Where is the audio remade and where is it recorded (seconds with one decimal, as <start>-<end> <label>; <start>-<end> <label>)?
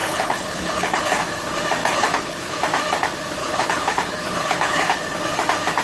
0.0-1.2 remade; 1.2-1.8 recorded; 1.8-2.6 remade; 2.6-3.4 recorded; 3.4-5.0 remade; 5.0-5.8 recorded